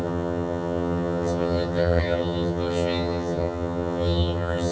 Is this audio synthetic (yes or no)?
yes